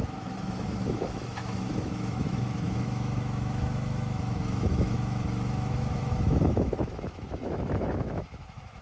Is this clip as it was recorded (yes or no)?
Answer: no